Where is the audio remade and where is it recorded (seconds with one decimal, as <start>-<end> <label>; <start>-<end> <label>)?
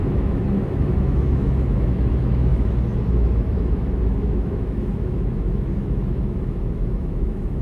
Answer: 0.0-7.6 remade